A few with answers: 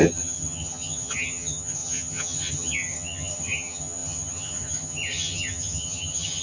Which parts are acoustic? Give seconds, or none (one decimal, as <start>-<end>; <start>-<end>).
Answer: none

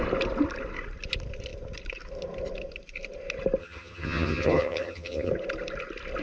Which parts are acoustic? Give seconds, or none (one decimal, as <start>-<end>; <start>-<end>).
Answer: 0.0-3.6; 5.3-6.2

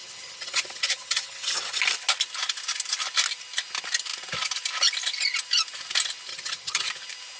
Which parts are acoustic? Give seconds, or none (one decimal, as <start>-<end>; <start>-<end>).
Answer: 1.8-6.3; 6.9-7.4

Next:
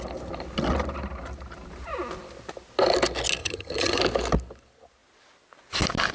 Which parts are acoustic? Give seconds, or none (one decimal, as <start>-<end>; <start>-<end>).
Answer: 0.0-3.4; 4.0-6.1

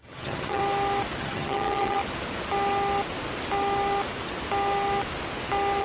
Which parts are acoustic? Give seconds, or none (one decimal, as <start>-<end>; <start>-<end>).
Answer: 0.6-1.2; 2.0-5.8

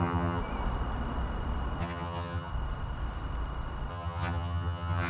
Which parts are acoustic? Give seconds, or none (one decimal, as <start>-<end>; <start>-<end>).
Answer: 0.4-1.8; 2.5-3.9